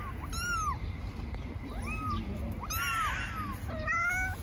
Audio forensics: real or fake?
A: fake